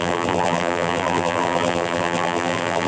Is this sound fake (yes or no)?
yes